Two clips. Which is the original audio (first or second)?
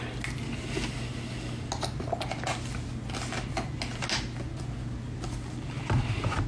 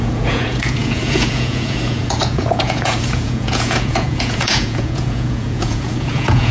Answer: first